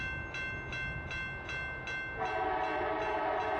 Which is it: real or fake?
real